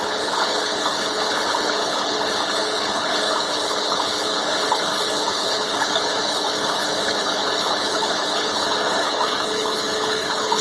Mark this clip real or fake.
fake